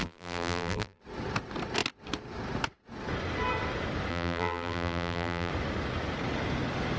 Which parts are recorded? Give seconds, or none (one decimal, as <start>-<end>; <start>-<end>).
1.0-4.1; 5.5-7.0